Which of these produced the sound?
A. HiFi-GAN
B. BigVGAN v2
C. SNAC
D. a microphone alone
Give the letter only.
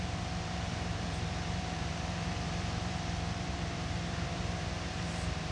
B